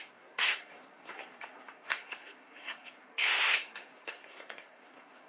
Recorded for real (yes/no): no